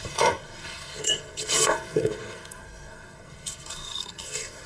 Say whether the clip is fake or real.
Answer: fake